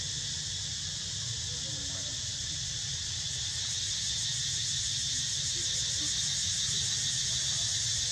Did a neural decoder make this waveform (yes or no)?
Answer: no